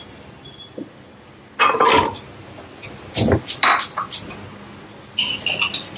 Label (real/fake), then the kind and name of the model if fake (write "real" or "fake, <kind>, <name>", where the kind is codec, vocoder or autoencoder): real